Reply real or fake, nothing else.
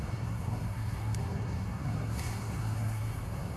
fake